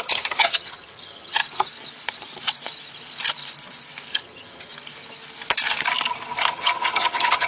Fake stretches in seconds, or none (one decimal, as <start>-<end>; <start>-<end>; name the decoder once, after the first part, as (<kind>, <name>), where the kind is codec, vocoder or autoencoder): 0.0-1.4 (vocoder, HiFi-GAN); 4.1-4.7; 6.5-7.5